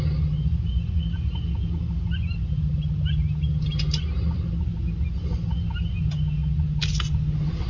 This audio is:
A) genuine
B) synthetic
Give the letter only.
A